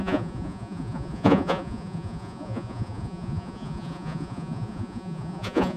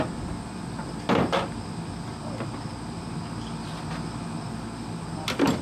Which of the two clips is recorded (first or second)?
second